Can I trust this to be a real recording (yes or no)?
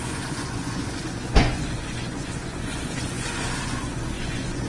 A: no